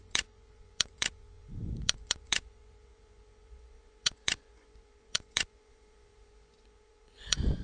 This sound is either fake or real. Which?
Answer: fake